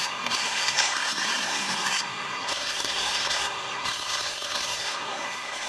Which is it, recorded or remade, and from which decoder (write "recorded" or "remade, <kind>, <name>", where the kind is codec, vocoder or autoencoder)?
remade, codec, SNAC